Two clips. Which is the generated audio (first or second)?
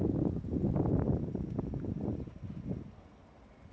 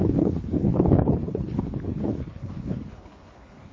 second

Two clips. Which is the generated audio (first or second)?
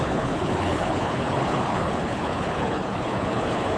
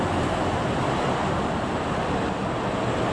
first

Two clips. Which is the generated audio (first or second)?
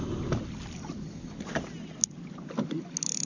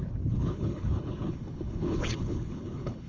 second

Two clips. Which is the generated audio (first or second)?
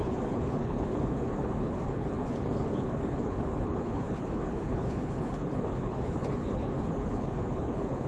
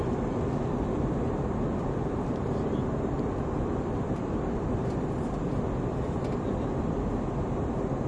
first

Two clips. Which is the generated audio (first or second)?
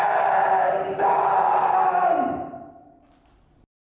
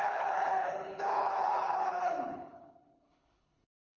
second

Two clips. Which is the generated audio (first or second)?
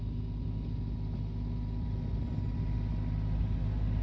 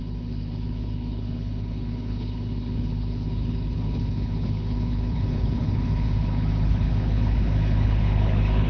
second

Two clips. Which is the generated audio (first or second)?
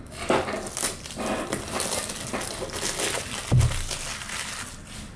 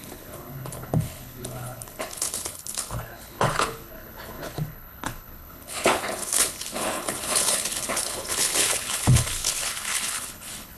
second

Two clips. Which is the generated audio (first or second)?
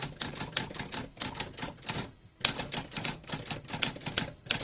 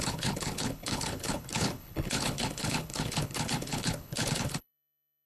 second